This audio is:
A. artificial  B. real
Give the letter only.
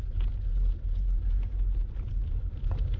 B